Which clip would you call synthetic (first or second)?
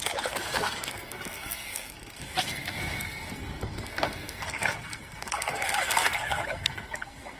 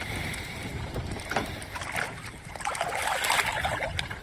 first